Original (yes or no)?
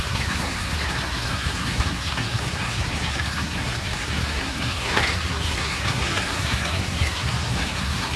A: no